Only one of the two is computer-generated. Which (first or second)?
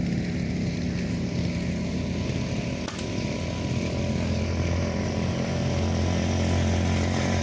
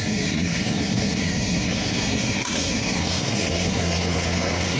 second